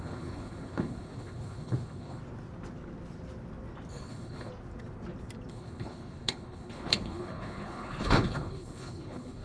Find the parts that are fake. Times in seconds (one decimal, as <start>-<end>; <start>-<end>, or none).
0.0-2.2; 3.9-4.5; 5.5-9.4